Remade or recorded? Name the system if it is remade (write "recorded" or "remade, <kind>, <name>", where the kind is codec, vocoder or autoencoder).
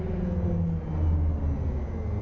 recorded